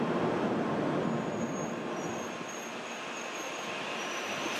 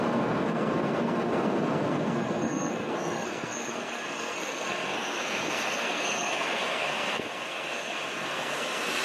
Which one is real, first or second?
first